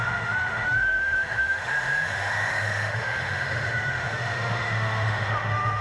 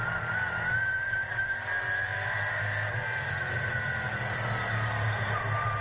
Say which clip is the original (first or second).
second